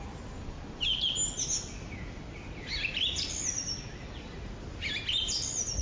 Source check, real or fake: real